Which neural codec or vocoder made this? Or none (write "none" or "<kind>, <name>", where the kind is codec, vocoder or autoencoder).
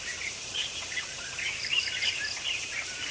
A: vocoder, BigVGAN v2